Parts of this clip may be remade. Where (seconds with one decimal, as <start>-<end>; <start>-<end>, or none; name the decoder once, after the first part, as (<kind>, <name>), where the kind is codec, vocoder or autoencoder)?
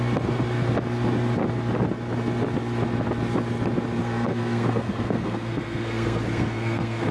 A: 4.0-7.1 (codec, SNAC)